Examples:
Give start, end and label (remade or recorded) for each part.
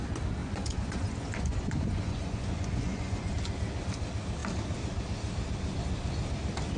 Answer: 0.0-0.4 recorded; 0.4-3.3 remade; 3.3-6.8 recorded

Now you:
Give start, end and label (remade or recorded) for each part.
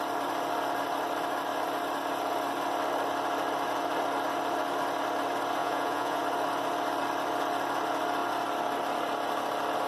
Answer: 0.0-5.6 recorded; 5.6-6.2 remade; 6.2-9.9 recorded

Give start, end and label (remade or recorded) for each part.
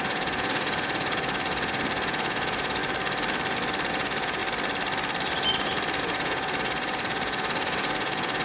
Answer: 0.0-2.8 remade; 2.8-3.9 recorded; 3.9-4.4 remade; 4.4-6.0 recorded; 6.0-8.4 remade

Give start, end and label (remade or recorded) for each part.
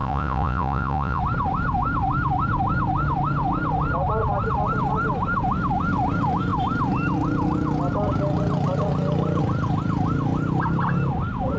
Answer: 0.0-1.2 remade; 1.2-11.6 recorded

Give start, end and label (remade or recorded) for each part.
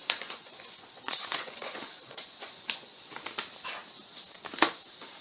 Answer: 0.0-3.1 remade; 3.1-5.2 recorded